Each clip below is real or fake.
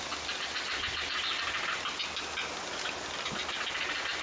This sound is real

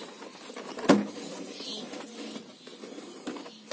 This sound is real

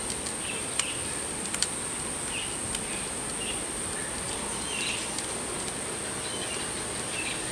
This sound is real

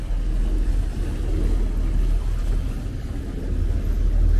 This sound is real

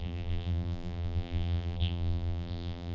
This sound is fake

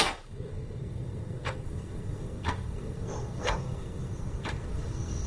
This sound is fake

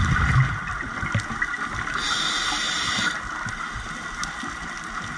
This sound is real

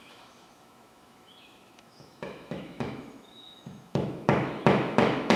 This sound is fake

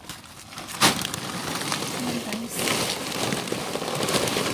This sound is real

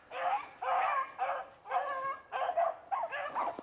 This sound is real